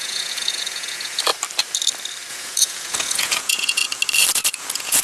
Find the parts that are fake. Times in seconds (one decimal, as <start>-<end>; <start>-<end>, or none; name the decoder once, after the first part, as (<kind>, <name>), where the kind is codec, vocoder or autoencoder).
0.0-1.3 (vocoder, Vocos); 2.3-3.8; 4.5-5.0